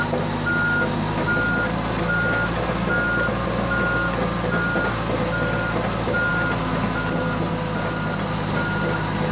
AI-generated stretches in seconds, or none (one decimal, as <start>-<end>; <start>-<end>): none